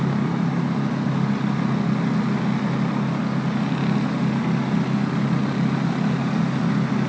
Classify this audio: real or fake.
real